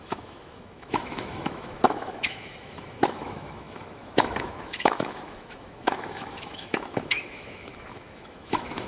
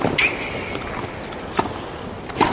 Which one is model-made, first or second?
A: first